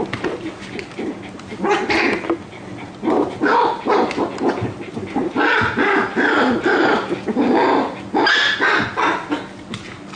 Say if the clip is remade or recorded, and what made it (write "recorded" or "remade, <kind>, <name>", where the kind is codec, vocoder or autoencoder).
recorded